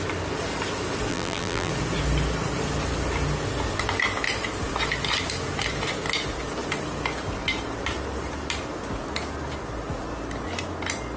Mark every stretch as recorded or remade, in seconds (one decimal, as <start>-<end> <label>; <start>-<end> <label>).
0.0-1.1 recorded; 1.1-1.7 remade; 1.7-11.2 recorded